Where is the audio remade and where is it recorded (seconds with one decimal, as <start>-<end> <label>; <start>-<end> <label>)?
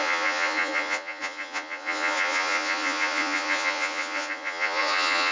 0.0-5.3 remade